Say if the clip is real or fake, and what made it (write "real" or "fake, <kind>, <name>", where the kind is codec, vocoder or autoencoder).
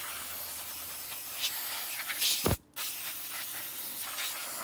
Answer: real